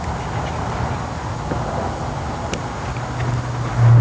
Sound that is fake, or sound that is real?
real